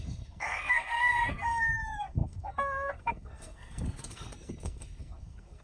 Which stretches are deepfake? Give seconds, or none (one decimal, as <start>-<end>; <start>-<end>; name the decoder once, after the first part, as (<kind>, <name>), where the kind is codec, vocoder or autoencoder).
0.0-5.6 (codec, SNAC)